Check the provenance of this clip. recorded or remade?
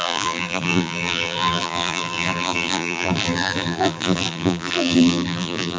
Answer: remade